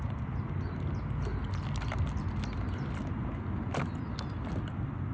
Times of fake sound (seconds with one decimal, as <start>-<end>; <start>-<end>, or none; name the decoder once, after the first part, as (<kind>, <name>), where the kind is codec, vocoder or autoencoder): none